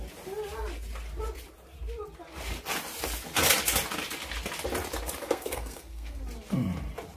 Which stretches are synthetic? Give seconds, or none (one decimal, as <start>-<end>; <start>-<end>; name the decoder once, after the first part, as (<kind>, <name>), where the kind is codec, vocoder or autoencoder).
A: 5.2-6.2 (codec, SNAC)